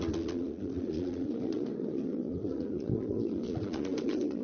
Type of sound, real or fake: fake